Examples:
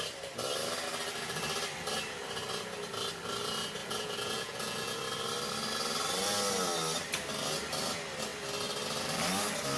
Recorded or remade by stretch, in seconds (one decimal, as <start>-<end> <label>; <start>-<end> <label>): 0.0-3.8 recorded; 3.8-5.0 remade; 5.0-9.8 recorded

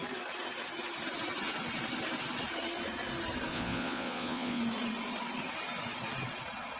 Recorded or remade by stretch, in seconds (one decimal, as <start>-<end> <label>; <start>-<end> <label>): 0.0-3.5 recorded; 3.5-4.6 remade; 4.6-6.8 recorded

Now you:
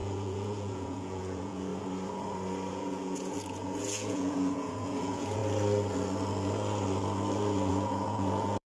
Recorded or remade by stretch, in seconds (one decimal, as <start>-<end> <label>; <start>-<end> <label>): 0.0-1.7 remade; 1.7-2.7 recorded; 2.7-5.4 remade; 5.4-7.7 recorded; 7.7-8.8 remade

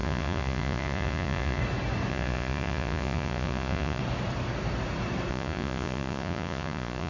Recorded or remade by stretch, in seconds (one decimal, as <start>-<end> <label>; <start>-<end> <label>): 0.0-1.6 remade; 1.6-2.1 recorded; 2.1-4.0 remade; 4.0-5.3 recorded; 5.3-7.1 remade